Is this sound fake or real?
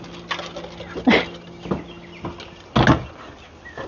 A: real